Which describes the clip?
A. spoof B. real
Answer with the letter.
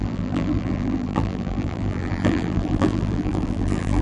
A